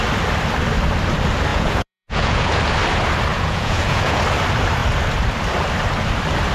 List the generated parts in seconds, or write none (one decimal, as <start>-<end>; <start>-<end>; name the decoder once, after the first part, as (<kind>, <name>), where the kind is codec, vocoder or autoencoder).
1.5-2.5 (vocoder, Vocos); 3.3-4.2